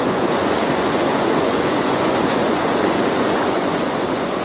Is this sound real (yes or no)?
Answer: no